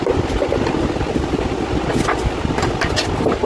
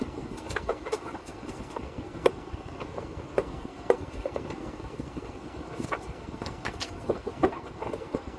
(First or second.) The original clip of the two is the first